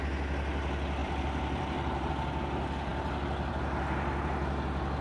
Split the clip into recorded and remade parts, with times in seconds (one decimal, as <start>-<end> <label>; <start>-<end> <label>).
0.0-1.0 recorded; 1.0-2.1 remade; 2.1-5.0 recorded